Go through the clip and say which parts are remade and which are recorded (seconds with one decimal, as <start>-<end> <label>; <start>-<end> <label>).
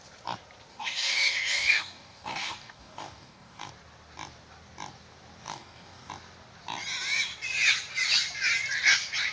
0.0-0.7 recorded; 0.7-3.7 remade; 3.7-5.4 recorded; 5.4-6.1 remade; 6.1-9.3 recorded